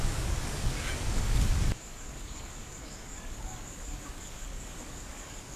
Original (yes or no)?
no